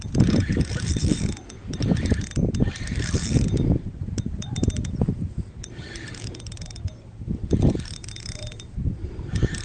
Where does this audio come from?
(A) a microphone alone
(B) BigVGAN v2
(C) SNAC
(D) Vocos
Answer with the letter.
B